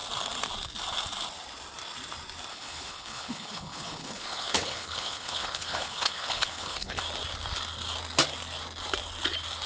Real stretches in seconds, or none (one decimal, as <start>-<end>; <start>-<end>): 0.0-2.5; 7.0-9.7